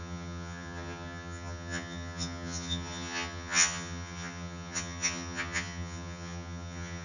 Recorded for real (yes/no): no